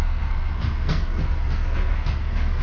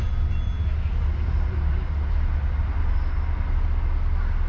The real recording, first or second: second